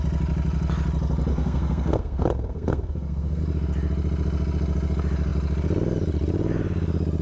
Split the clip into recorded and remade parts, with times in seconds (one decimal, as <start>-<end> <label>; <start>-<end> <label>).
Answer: 0.0-1.3 recorded; 1.3-3.4 remade; 3.4-7.2 recorded